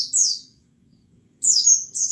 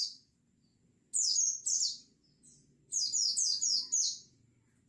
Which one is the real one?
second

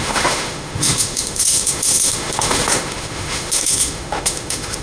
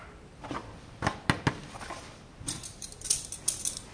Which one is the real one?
second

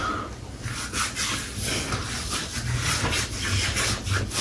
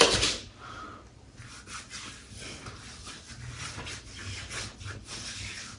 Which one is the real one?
first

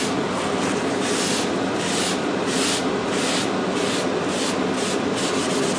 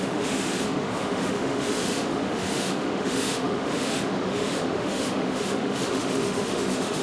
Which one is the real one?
first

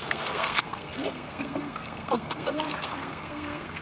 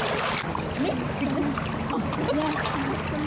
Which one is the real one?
second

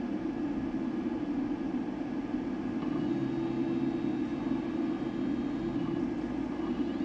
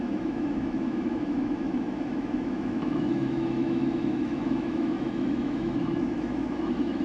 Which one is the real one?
first